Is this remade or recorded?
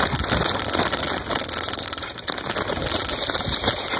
recorded